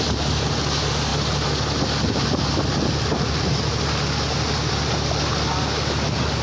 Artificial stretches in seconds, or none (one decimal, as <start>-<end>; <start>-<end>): none